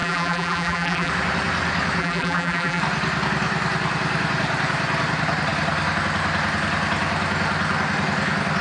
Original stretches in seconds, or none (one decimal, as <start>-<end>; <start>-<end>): 1.1-2.0; 2.8-8.6